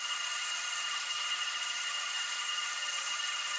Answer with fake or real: fake